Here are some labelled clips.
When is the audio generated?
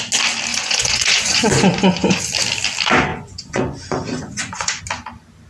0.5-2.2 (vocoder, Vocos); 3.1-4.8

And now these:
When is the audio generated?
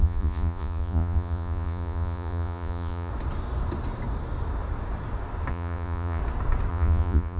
0.0-3.1 (vocoder, Vocos); 5.5-6.2; 6.7-7.4